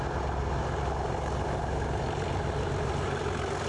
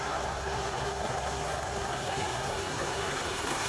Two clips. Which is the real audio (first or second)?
first